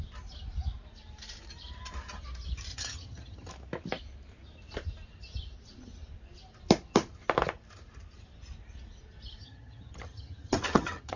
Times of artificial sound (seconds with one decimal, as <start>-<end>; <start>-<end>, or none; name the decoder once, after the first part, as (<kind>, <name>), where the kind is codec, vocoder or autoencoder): 2.7-3.5 (vocoder, HiFi-GAN); 9.4-11.2